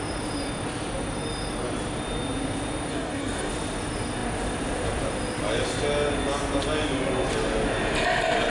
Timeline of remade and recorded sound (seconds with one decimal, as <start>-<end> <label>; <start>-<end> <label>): 0.0-2.9 recorded; 2.9-3.5 remade; 3.5-8.5 recorded